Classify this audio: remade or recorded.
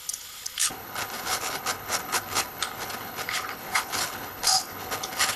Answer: remade